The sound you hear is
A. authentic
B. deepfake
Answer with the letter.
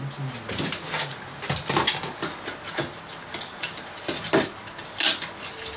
A